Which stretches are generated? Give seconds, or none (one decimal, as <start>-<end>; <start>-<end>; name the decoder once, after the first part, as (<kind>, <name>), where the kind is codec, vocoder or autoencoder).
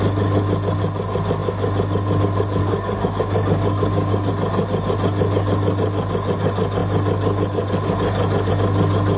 2.6-4.3 (codec, DAC)